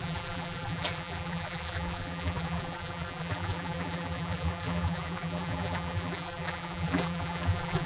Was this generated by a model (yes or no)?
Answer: yes